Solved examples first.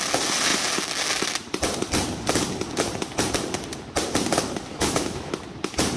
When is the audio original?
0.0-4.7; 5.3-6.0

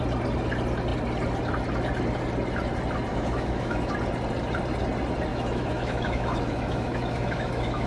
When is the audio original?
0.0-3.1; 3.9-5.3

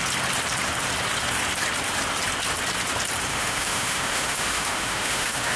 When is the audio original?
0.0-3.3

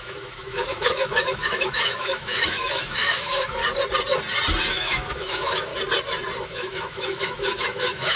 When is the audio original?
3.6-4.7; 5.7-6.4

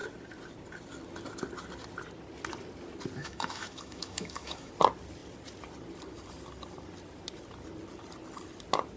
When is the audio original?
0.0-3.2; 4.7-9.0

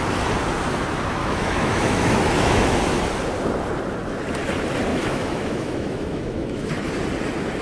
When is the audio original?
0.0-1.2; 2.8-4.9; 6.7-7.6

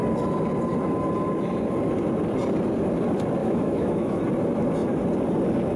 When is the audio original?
0.0-3.4; 4.2-5.8

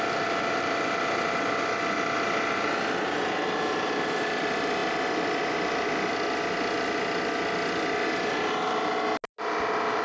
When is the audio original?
0.0-10.0